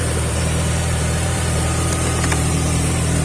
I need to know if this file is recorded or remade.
remade